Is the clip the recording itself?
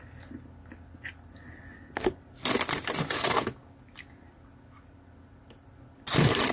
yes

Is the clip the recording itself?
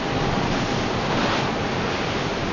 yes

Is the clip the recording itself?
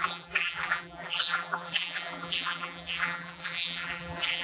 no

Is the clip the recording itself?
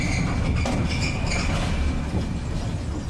yes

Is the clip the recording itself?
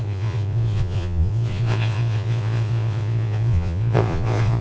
no